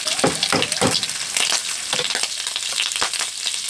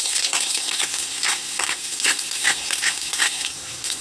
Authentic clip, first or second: first